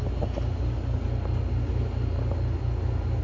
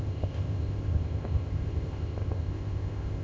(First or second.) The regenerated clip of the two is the second